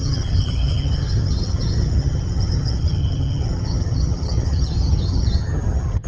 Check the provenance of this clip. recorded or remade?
remade